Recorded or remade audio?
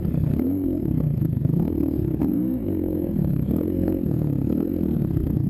remade